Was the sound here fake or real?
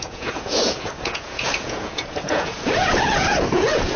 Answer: fake